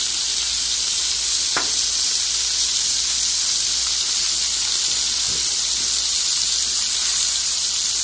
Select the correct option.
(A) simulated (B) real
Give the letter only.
B